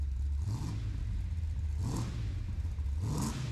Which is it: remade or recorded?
recorded